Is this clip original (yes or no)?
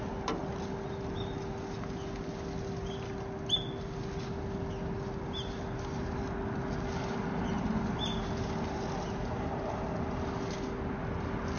yes